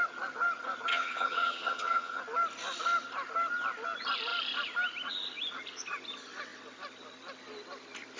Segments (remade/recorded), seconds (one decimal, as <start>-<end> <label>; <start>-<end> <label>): 0.0-0.9 recorded; 0.9-2.2 remade; 2.2-8.2 recorded